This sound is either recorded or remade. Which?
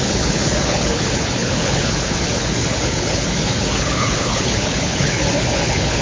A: remade